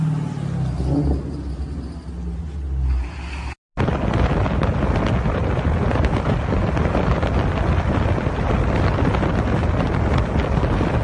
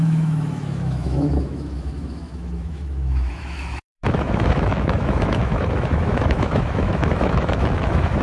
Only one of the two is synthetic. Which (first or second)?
second